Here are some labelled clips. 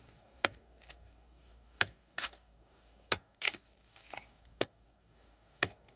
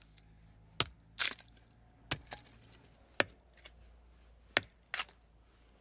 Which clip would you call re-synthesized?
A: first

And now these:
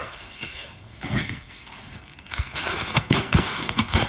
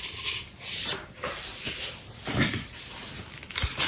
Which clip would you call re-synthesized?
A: first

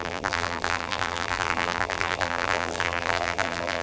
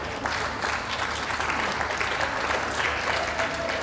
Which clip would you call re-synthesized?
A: first